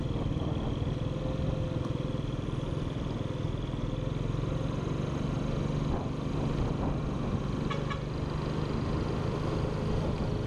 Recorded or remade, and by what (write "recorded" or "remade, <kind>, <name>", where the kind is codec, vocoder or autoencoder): recorded